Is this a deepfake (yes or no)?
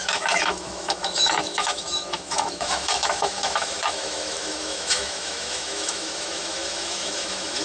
yes